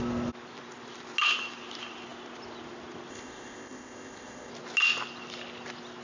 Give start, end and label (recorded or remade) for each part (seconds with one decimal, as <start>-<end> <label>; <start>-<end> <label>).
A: 0.0-3.1 recorded; 3.1-4.5 remade; 4.5-6.0 recorded